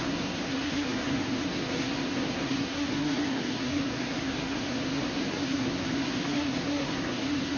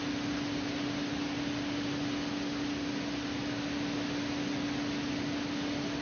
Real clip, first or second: second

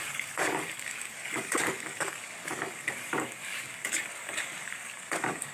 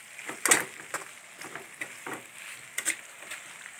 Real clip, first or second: second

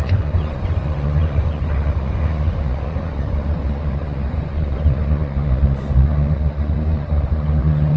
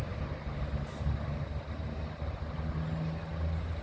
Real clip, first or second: second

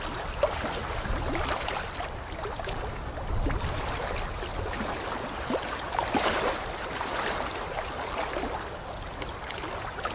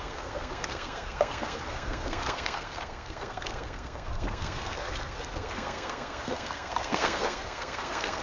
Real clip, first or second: first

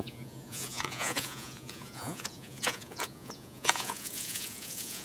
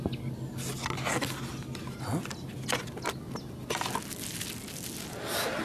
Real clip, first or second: second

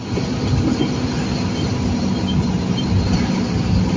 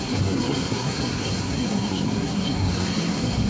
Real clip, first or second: first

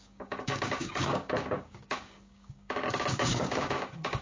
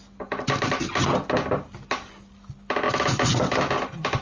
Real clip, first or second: second